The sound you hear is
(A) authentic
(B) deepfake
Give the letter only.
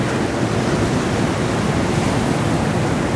A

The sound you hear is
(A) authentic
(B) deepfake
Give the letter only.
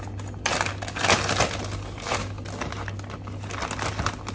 A